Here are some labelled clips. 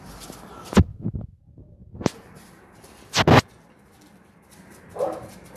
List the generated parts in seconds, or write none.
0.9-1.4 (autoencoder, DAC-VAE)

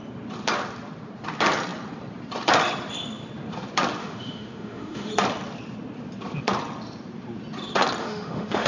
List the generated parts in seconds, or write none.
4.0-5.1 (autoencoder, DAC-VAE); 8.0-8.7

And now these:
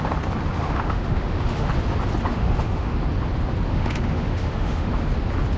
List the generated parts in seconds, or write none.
0.6-1.7 (autoencoder, DAC-VAE); 2.3-3.0; 3.7-4.9

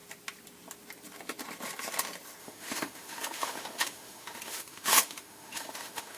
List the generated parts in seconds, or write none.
2.4-6.2 (autoencoder, DAC-VAE)